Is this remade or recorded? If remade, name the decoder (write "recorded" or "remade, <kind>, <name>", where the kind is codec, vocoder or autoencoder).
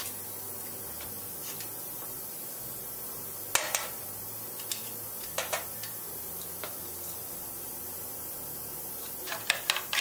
recorded